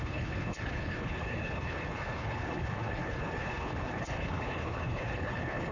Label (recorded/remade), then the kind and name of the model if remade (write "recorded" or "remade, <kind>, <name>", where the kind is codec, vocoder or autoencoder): remade, codec, HILCodec